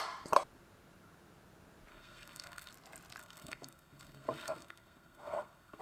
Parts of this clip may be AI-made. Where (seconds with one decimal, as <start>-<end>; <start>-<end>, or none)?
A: 1.9-2.7; 3.2-5.8